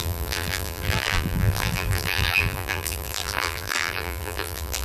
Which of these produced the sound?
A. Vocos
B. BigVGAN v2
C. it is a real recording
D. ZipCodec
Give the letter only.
B